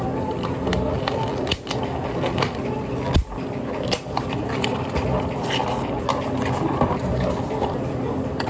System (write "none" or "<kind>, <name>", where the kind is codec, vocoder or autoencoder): none